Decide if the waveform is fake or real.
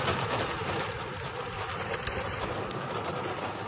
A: real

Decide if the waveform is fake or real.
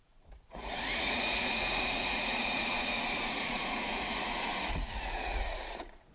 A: fake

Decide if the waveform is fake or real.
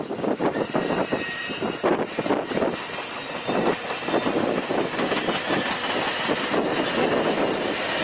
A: real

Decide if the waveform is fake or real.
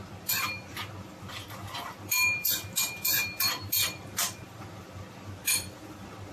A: fake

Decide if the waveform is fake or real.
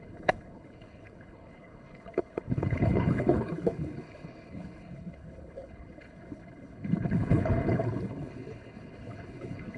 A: fake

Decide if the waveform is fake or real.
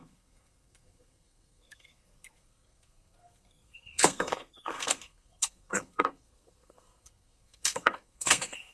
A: fake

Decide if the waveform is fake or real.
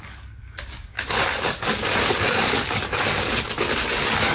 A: fake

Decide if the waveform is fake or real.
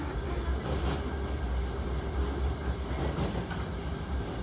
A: real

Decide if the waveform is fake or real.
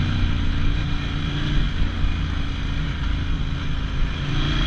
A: real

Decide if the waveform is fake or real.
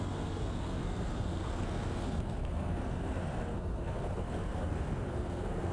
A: fake